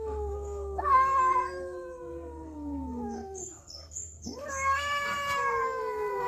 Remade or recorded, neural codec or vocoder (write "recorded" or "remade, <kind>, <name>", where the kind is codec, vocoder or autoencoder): remade, codec, SNAC